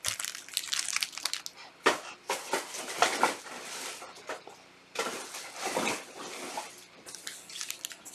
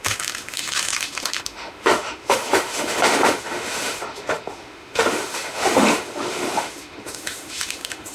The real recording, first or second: first